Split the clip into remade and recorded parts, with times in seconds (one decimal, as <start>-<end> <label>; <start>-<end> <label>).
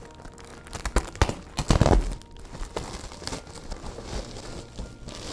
0.0-5.3 recorded